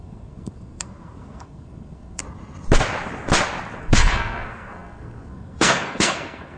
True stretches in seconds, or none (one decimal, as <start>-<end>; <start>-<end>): 2.2-3.8